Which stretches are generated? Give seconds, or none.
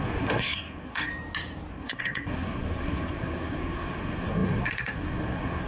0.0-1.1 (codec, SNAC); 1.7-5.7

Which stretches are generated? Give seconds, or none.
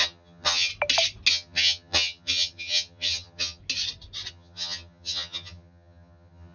0.0-0.7 (vocoder, HiFi-GAN); 1.3-3.6; 4.3-6.5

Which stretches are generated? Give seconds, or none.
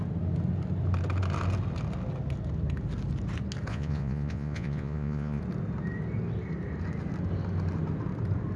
3.7-5.4 (vocoder, Vocos)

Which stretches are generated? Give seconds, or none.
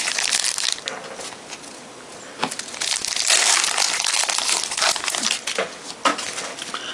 0.0-6.1 (vocoder, BigVGAN v2)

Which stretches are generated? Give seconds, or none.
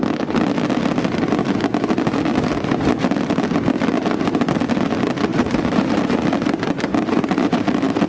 5.3-6.2 (vocoder, BigVGAN v2); 6.9-8.1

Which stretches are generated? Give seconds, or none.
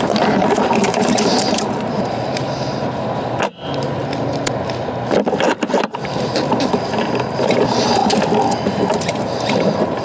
0.0-4.0 (vocoder, BigVGAN v2); 5.9-8.0; 9.1-10.0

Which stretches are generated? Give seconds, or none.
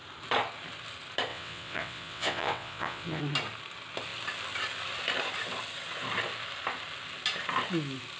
1.3-3.2 (vocoder, WaveNeXt)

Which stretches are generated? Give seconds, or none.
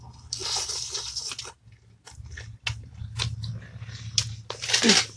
none